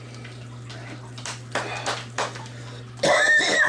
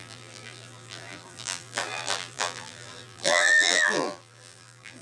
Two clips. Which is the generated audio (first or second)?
second